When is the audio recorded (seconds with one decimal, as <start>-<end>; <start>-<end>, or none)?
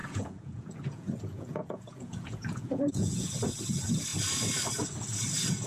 3.4-5.7